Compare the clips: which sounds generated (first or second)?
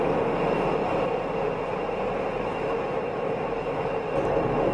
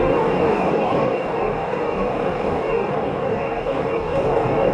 second